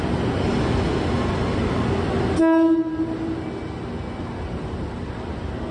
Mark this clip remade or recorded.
recorded